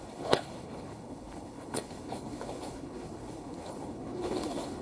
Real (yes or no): no